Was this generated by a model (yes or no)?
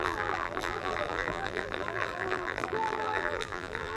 yes